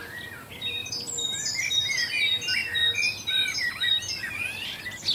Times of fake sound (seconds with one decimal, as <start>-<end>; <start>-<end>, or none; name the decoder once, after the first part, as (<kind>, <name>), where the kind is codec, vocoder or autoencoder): 0.8-2.1 (vocoder, BigVGAN v2)